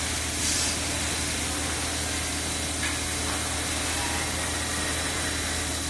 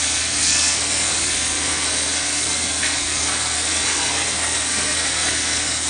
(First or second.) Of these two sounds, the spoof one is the second